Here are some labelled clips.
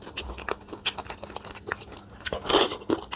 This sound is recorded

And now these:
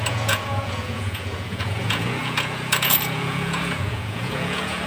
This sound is remade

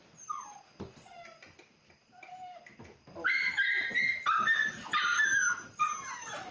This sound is recorded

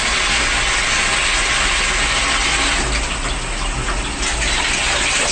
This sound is recorded